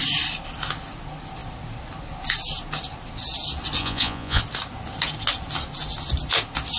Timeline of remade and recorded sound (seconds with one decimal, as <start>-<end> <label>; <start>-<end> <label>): 0.0-3.8 recorded; 3.8-4.4 remade; 4.4-6.8 recorded

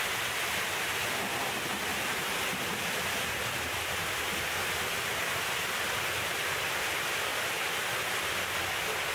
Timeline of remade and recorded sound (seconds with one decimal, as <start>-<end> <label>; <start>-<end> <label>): 0.0-9.1 recorded

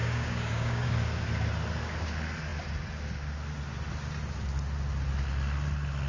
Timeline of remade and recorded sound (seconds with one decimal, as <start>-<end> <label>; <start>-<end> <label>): 0.0-0.9 remade; 0.9-6.1 recorded

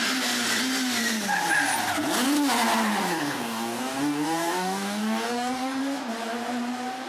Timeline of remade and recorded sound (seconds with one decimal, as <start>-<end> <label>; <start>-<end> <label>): 0.0-3.0 recorded; 3.0-5.8 remade; 5.8-7.1 recorded

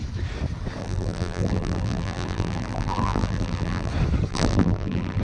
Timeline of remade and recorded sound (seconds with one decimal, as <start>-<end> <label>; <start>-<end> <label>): 0.0-0.8 recorded; 0.8-3.9 remade; 3.9-4.3 recorded; 4.3-5.2 remade

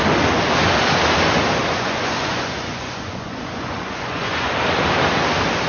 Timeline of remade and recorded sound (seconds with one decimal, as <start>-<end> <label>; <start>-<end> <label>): 0.0-1.6 recorded; 1.6-4.5 remade; 4.5-5.7 recorded

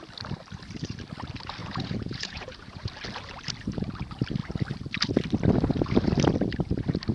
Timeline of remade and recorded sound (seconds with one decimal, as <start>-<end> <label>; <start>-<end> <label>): 0.0-1.6 recorded; 1.6-2.9 remade; 2.9-7.1 recorded